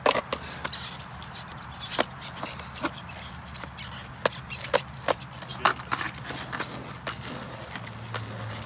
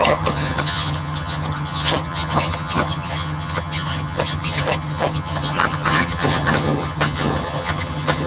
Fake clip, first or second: second